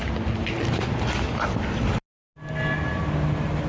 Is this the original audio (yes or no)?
yes